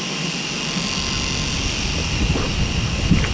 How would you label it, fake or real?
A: real